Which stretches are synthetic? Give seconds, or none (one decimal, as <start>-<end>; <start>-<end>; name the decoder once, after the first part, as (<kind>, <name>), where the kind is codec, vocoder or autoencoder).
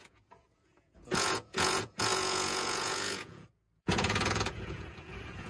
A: 0.0-5.5 (vocoder, Vocos)